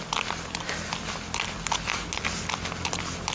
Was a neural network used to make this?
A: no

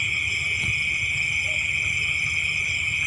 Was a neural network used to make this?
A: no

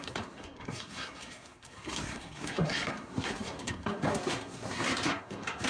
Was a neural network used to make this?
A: yes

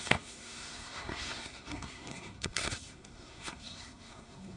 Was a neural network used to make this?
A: yes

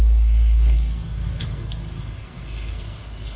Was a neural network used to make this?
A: yes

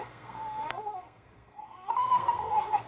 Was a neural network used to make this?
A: yes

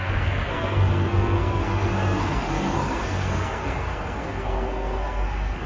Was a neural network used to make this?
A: yes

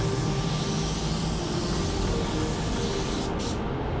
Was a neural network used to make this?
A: no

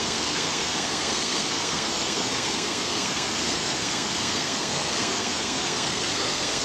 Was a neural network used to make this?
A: yes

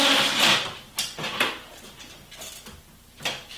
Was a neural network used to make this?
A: no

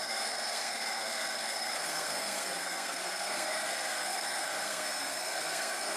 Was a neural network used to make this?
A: yes